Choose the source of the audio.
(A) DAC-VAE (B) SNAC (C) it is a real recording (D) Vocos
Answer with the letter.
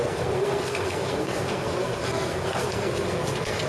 B